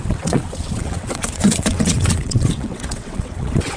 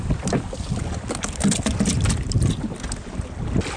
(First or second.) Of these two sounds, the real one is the second